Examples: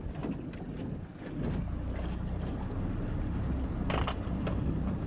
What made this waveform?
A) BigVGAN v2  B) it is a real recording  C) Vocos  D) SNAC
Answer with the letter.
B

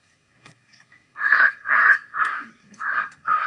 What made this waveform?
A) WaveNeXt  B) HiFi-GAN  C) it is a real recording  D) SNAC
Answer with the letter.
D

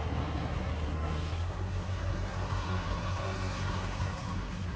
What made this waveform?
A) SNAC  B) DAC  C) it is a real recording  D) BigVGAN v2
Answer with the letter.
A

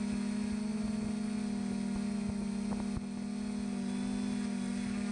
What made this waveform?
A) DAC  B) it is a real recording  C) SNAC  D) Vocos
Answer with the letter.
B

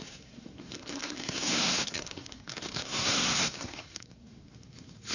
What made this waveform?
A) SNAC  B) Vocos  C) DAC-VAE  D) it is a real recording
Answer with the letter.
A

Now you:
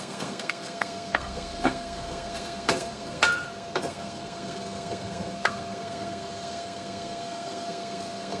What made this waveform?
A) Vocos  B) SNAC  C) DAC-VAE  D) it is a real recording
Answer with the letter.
B